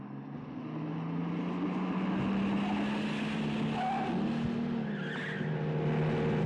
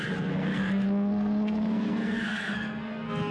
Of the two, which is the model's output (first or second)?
second